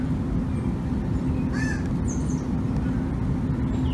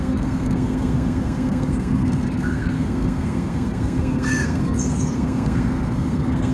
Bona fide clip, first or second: first